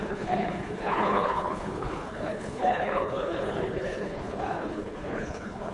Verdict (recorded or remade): remade